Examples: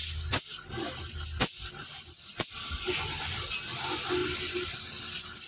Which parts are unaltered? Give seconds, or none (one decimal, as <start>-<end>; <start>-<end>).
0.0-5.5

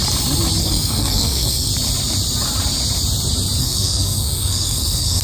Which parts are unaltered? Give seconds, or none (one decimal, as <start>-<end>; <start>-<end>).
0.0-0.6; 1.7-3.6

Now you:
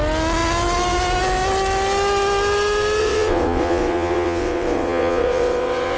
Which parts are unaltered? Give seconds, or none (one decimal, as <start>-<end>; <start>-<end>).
0.0-3.0

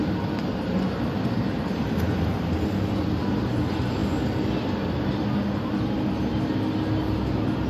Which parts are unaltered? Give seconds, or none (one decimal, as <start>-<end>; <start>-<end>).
0.0-7.7

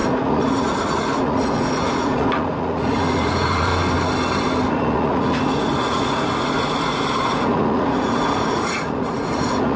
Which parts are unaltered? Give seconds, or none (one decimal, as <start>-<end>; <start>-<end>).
3.7-4.7